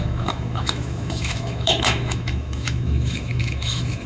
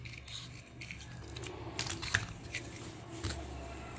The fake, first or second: first